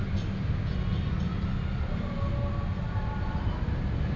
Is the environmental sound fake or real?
real